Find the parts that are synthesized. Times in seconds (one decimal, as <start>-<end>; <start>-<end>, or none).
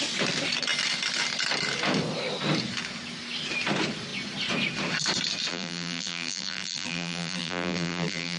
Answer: 5.5-8.4